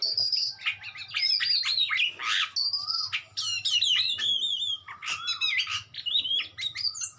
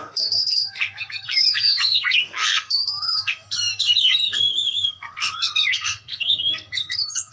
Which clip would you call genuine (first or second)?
first